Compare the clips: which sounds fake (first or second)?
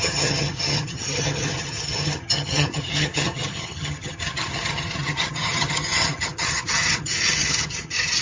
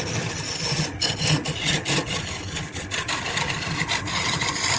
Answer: first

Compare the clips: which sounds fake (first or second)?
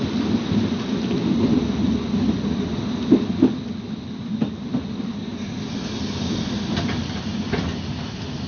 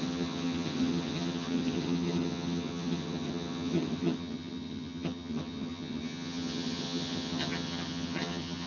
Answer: second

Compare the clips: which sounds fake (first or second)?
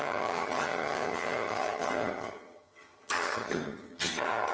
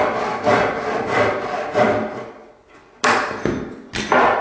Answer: first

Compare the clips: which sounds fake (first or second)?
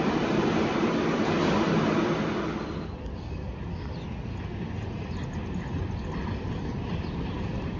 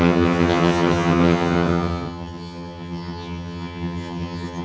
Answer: second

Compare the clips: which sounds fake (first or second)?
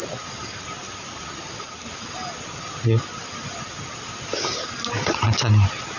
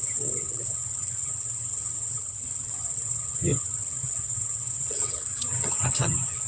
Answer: second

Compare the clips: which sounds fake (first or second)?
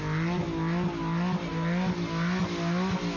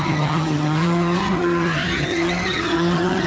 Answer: second